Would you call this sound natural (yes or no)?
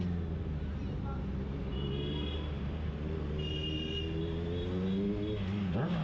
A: yes